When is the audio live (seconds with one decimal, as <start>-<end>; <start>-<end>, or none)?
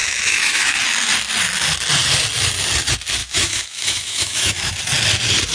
0.8-3.2; 4.7-5.5